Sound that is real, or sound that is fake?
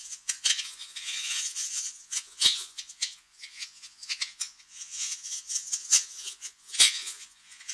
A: fake